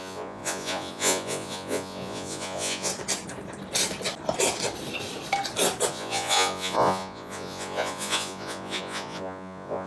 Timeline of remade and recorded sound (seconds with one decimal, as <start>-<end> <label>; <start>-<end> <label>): 0.0-2.9 remade; 2.9-5.9 recorded; 5.9-9.9 remade